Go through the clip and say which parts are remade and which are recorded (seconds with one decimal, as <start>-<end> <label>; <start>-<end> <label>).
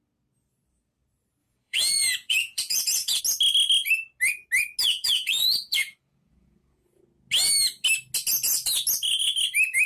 0.0-1.4 recorded; 1.4-3.2 remade; 3.2-4.8 recorded; 4.8-7.0 remade; 7.0-9.9 recorded